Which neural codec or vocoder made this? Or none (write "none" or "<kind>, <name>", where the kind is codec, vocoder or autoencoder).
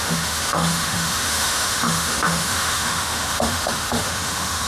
autoencoder, DAC-VAE